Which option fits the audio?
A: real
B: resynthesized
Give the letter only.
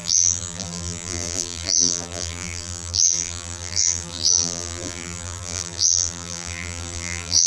B